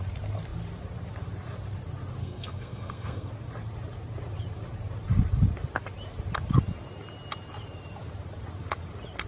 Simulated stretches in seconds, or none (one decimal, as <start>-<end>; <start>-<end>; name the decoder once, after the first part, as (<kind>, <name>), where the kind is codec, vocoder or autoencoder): 2.2-3.3 (codec, SNAC)